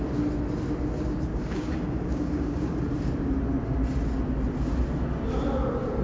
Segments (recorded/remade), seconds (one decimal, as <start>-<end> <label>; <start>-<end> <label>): 0.0-1.3 recorded; 1.3-2.8 remade; 2.8-6.0 recorded